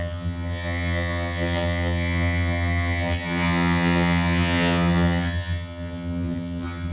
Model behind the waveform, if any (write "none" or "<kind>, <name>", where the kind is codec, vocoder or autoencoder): vocoder, HiFi-GAN